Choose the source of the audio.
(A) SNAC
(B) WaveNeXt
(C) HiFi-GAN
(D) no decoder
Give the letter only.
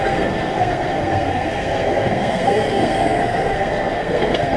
A